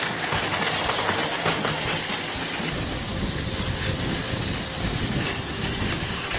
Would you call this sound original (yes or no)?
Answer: yes